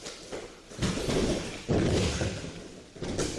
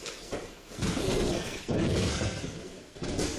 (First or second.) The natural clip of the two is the first